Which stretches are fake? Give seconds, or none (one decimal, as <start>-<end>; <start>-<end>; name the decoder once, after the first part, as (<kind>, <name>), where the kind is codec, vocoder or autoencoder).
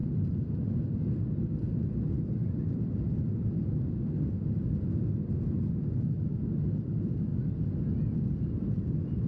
0.0-1.2 (vocoder, BigVGAN v2); 2.4-4.3; 7.3-9.3